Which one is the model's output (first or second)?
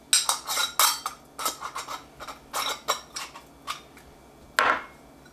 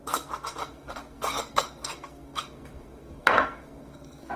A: second